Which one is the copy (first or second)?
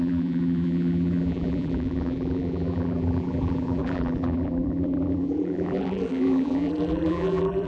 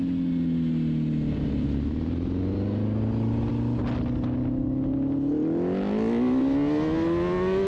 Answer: first